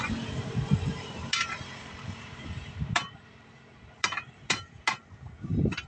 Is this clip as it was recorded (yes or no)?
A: no